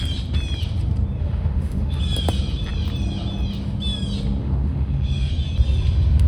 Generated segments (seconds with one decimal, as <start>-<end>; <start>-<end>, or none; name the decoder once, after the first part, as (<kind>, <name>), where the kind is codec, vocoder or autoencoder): 1.2-2.0 (autoencoder, DAC-VAE); 4.4-5.3